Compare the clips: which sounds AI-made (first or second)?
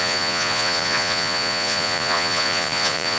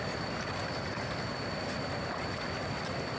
first